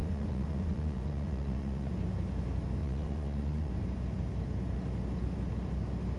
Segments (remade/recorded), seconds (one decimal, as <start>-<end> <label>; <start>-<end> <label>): 0.0-1.9 remade; 1.9-2.8 recorded; 2.8-3.7 remade; 3.7-6.2 recorded